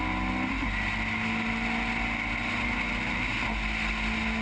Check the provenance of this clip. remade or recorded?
recorded